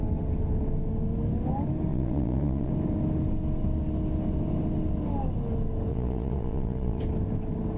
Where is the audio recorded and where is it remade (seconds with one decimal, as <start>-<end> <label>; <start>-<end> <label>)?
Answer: 0.0-1.9 recorded; 1.9-2.7 remade; 2.7-5.9 recorded; 5.9-7.0 remade; 7.0-7.8 recorded